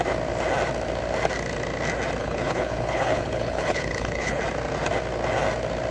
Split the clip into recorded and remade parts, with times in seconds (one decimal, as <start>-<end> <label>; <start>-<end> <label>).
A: 0.0-2.2 recorded; 2.2-4.4 remade; 4.4-5.9 recorded